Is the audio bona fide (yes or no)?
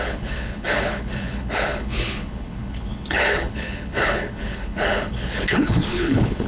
no